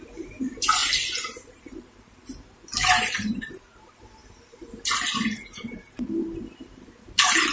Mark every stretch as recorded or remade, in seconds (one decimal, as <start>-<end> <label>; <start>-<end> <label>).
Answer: 0.0-7.5 remade